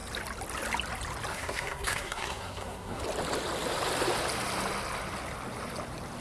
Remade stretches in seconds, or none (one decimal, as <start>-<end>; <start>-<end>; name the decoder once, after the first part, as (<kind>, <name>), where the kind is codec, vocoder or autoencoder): 1.3-3.0 (codec, SNAC)